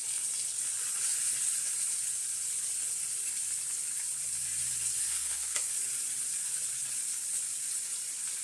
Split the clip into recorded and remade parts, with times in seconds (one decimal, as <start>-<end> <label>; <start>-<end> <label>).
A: 0.0-5.1 recorded; 5.1-5.7 remade; 5.7-8.4 recorded